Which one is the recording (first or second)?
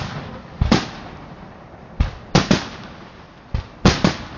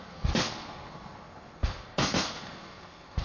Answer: first